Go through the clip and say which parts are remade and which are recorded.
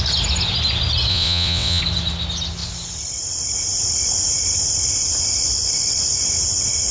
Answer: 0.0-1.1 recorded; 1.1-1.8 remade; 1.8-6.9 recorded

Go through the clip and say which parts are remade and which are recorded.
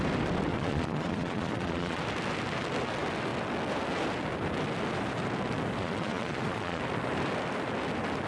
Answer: 0.0-0.5 recorded; 0.5-2.0 remade; 2.0-5.8 recorded; 5.8-6.8 remade; 6.8-8.3 recorded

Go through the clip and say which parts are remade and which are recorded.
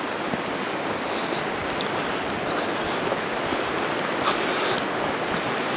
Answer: 0.0-5.8 recorded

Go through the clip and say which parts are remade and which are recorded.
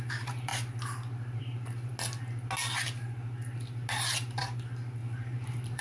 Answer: 0.0-0.5 remade; 0.5-1.4 recorded; 1.4-1.9 remade; 1.9-4.4 recorded; 4.4-5.8 remade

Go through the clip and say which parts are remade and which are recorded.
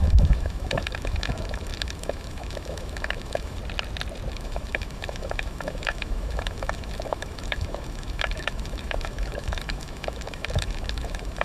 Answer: 0.0-3.6 remade; 3.6-4.3 recorded; 4.3-11.4 remade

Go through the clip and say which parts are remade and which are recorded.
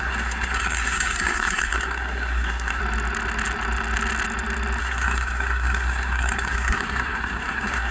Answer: 0.0-2.8 remade; 2.8-4.8 recorded; 4.8-7.9 remade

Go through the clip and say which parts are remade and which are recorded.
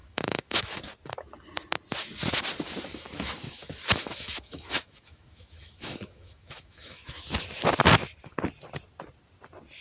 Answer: 0.0-0.8 remade; 0.8-2.9 recorded; 2.9-7.3 remade; 7.3-9.8 recorded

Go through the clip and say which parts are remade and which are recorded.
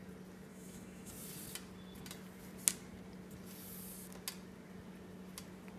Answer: 0.0-0.5 recorded; 0.5-1.1 remade; 1.1-5.8 recorded